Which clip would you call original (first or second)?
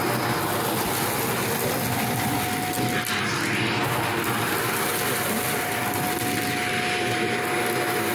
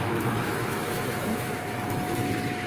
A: first